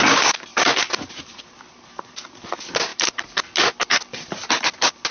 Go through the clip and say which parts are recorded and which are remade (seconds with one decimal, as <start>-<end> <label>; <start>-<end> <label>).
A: 0.0-0.5 recorded; 0.5-2.3 remade; 2.3-5.1 recorded

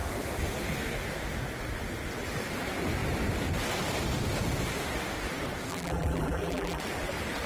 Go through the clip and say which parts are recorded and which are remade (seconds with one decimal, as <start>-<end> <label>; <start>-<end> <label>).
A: 0.0-5.7 recorded; 5.7-6.8 remade; 6.8-7.5 recorded